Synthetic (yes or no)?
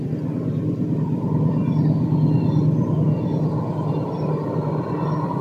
no